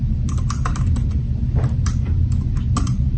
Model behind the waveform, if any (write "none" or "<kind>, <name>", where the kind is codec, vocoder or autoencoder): none